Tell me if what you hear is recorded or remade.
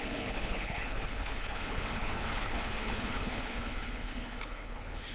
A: remade